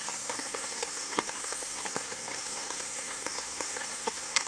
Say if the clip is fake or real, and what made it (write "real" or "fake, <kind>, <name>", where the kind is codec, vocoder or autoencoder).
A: fake, codec, SNAC